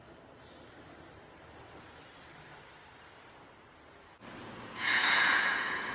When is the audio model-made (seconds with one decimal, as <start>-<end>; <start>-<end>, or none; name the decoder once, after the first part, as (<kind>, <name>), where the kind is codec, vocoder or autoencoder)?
4.4-5.9 (vocoder, Vocos)